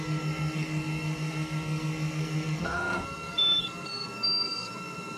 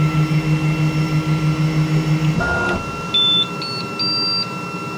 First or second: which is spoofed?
first